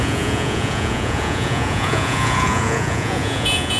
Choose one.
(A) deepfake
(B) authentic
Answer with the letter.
A